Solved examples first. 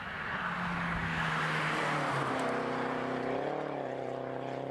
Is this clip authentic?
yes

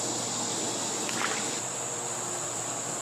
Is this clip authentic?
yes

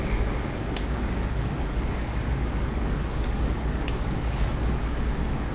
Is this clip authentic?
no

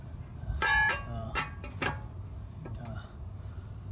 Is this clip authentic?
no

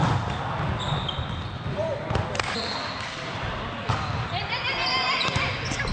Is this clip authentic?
yes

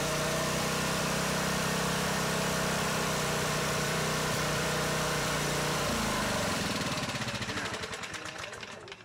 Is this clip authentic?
no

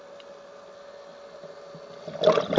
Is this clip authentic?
yes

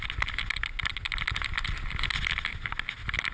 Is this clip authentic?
yes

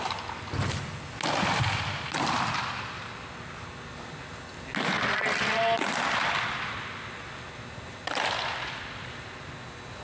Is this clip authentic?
yes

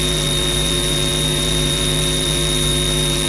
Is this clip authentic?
no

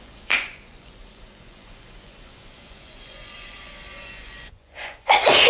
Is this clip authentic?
no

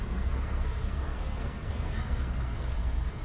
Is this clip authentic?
no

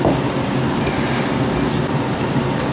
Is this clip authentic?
yes